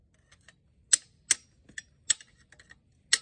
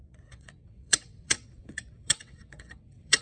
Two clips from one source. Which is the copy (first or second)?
second